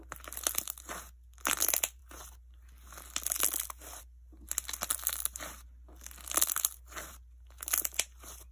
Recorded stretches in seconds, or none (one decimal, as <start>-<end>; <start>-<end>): 0.0-8.5